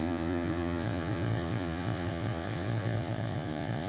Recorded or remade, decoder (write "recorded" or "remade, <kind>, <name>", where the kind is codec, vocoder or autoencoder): remade, vocoder, Vocos